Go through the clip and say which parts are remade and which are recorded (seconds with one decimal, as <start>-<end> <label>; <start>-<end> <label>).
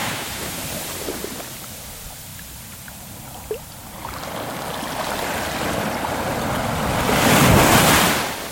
0.0-0.6 remade; 0.6-8.5 recorded